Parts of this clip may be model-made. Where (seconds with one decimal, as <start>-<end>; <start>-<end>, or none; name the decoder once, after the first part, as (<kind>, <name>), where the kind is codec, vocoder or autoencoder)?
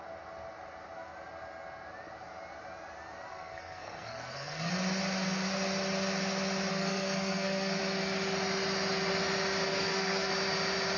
3.3-4.7 (codec, SNAC); 6.7-7.8; 9.7-10.3